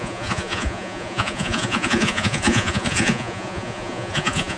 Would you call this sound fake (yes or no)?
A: yes